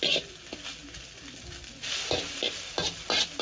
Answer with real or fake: real